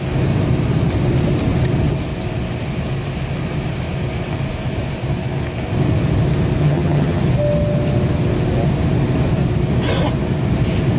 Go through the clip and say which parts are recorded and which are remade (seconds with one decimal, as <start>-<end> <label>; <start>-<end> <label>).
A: 0.0-6.6 recorded; 6.6-7.2 remade; 7.2-11.0 recorded